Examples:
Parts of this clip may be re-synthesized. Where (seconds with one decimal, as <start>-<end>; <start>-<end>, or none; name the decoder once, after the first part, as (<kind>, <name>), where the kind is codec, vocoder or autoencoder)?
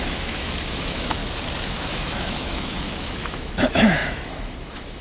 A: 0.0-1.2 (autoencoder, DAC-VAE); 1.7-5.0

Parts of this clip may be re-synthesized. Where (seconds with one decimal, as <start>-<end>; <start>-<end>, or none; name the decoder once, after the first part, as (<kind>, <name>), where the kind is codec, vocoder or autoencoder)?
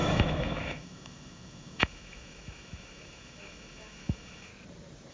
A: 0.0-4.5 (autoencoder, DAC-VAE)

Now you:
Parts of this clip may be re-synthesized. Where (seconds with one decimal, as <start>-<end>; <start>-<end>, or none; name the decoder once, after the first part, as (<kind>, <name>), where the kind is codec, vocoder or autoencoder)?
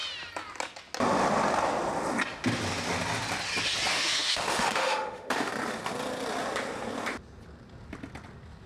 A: 3.9-5.5 (autoencoder, DAC-VAE)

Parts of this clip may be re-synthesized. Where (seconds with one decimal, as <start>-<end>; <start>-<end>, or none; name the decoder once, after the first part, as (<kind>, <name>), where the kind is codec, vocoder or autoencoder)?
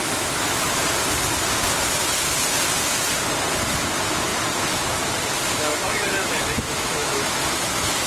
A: 0.0-0.8 (autoencoder, DAC-VAE); 3.5-4.3; 5.6-8.1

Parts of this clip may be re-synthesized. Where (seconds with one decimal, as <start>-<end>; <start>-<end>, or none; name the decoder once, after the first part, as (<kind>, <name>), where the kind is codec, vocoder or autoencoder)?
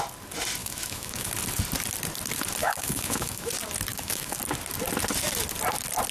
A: 0.6-1.3 (autoencoder, DAC-VAE); 2.6-3.5; 3.9-4.4